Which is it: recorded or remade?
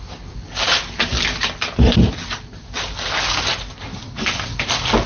recorded